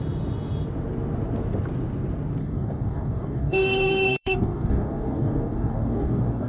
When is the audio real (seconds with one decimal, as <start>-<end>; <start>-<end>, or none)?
0.0-2.4

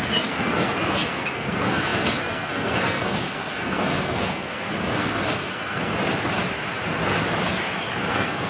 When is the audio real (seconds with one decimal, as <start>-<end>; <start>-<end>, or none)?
5.9-8.1

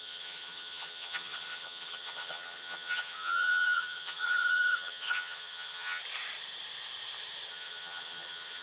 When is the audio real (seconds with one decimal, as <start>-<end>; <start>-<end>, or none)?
6.0-7.5

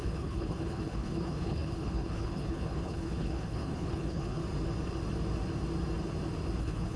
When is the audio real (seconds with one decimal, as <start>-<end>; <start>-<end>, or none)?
4.4-6.6